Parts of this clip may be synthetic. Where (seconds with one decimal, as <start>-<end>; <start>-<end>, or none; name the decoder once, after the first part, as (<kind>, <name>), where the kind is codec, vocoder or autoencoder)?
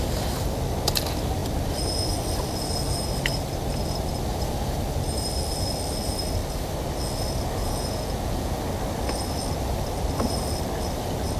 7.6-8.6 (vocoder, Vocos)